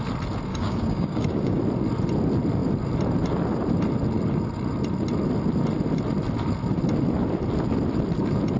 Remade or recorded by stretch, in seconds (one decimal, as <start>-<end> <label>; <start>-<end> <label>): 0.0-0.5 recorded; 0.5-1.6 remade; 1.6-8.6 recorded